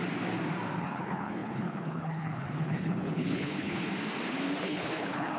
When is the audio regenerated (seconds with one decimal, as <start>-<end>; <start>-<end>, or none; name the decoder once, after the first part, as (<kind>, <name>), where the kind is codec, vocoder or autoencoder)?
0.8-3.9 (codec, HILCodec); 4.6-5.4